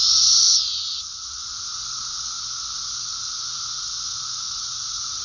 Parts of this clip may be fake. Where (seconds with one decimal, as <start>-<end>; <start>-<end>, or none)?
0.0-1.5; 3.1-5.2